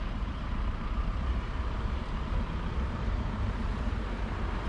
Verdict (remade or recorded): remade